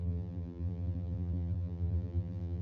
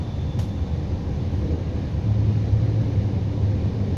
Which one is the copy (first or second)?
first